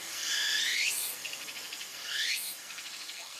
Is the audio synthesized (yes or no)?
yes